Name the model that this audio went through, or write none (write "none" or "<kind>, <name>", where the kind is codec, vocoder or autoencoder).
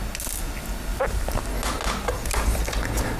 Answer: none